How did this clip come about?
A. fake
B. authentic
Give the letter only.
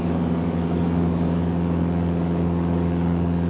A